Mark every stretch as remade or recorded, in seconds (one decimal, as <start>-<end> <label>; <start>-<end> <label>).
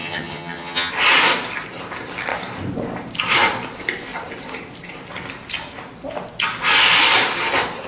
0.0-0.9 remade; 0.9-7.9 recorded